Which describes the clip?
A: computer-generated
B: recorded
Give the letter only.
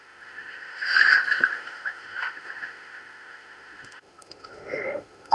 A